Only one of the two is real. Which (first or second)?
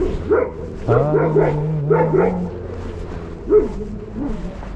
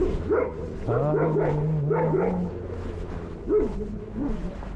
first